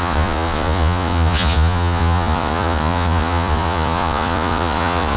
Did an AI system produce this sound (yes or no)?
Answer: yes